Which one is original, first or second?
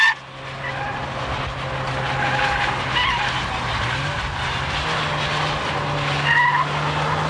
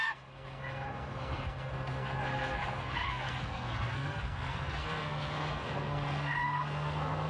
first